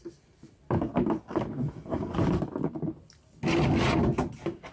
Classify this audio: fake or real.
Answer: real